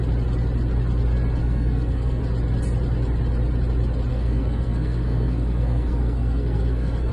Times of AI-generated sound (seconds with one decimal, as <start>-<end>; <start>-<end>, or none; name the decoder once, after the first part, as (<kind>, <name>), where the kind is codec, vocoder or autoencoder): 1.4-2.2 (codec, SNAC); 4.1-7.1